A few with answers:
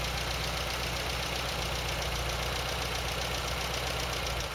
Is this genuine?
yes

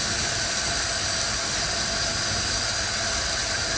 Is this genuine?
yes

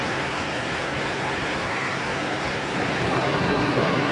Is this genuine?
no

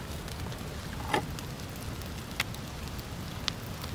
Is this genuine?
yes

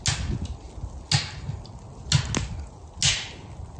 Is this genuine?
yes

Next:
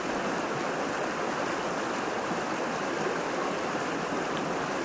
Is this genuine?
yes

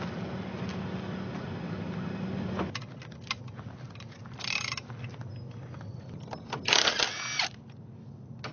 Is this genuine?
yes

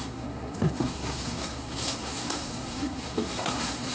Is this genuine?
no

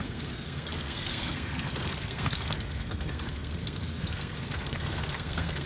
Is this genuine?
no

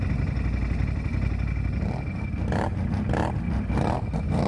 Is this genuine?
yes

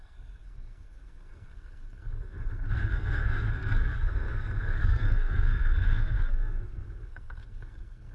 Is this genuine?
no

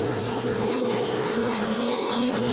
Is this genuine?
no